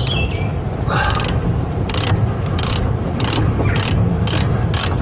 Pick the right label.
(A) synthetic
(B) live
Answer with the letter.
B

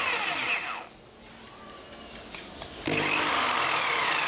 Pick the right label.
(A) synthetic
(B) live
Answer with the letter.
B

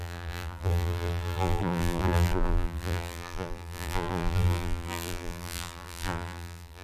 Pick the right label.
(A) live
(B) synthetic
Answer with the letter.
B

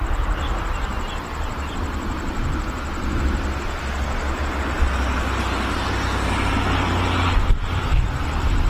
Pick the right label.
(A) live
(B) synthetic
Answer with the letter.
A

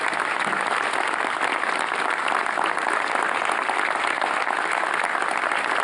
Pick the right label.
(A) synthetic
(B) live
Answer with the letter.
B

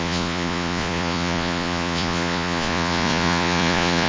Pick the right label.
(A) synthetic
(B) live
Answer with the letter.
A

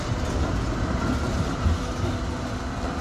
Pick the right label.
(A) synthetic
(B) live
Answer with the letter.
B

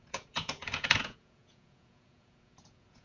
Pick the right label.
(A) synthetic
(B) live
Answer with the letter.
A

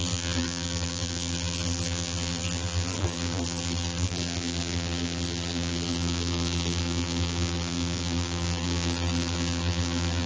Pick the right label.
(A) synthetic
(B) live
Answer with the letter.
A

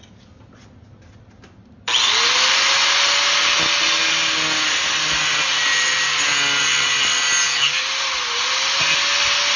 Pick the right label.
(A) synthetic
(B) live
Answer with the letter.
B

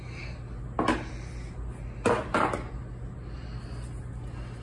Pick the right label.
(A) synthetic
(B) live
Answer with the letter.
B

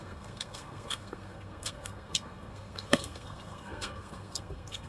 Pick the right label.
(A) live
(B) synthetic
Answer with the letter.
B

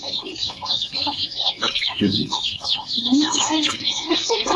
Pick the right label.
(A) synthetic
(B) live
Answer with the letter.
A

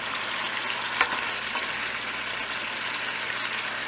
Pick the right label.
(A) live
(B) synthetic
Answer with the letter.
A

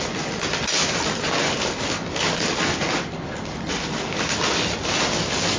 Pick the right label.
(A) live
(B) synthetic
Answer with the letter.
A